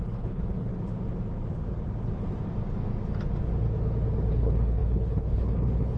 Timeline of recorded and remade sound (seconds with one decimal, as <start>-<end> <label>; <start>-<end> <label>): 0.0-0.7 remade; 0.7-4.3 recorded; 4.3-6.0 remade